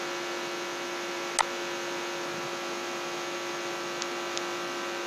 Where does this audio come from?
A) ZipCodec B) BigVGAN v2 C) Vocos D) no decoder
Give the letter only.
D